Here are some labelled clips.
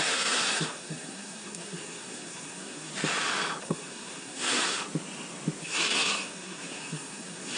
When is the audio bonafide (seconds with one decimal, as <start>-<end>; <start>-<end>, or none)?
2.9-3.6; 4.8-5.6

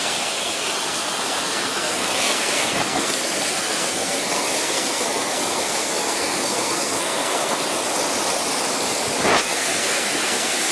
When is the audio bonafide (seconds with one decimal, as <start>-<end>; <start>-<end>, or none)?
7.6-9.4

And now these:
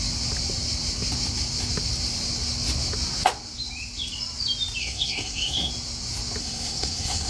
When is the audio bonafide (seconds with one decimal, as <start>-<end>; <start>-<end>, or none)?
0.0-4.8; 5.7-6.4

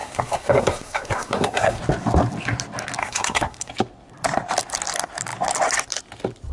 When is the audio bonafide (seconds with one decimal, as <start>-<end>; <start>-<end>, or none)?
1.8-3.0; 3.7-6.5